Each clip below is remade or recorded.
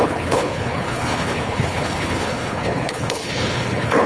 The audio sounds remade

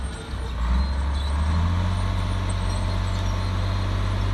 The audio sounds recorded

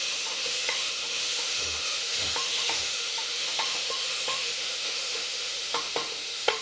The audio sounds remade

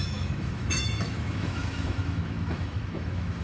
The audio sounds remade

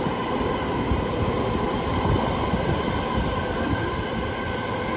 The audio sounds remade